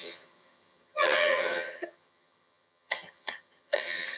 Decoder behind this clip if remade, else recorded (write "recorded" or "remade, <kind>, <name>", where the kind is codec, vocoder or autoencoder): remade, vocoder, HiFi-GAN